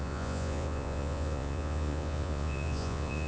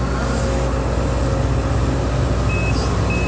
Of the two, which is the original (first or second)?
second